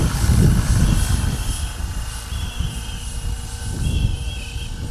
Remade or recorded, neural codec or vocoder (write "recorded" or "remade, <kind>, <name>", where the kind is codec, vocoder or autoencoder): recorded